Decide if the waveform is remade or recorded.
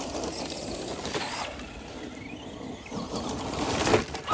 recorded